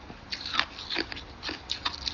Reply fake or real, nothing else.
real